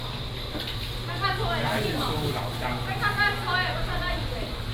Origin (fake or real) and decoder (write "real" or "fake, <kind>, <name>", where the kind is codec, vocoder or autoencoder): real